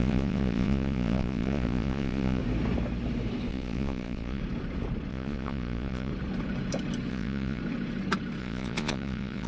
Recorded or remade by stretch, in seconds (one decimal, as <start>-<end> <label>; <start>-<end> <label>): 0.0-2.4 remade; 2.4-3.5 recorded; 3.5-4.4 remade; 4.4-5.1 recorded; 5.1-6.1 remade; 6.1-7.1 recorded; 7.1-7.6 remade; 7.6-8.4 recorded; 8.4-9.5 remade